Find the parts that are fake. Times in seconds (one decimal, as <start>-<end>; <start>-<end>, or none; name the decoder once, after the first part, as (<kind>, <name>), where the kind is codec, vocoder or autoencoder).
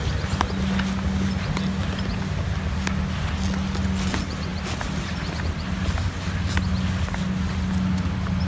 none